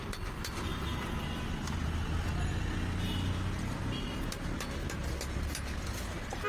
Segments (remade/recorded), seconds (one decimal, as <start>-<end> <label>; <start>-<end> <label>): 0.0-6.5 recorded